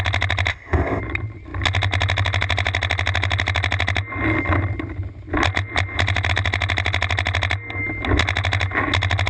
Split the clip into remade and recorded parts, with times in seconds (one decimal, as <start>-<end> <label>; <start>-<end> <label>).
0.0-0.5 recorded; 0.5-1.0 remade; 1.0-9.3 recorded